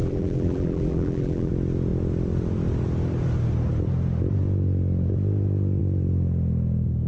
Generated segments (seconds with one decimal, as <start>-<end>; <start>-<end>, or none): 0.0-1.5